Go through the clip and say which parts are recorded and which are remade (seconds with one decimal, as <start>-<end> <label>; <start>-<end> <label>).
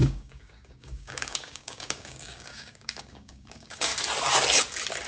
0.0-3.9 remade; 3.9-5.1 recorded